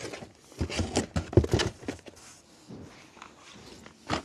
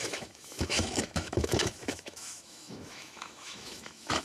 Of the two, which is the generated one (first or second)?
second